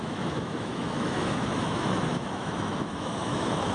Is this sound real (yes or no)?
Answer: no